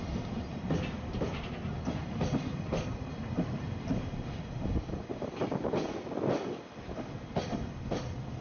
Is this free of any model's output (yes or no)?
yes